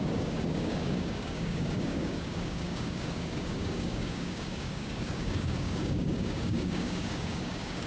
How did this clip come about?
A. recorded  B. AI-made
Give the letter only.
B